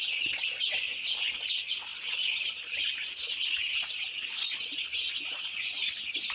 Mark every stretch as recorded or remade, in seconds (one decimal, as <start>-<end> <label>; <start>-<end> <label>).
0.0-6.3 recorded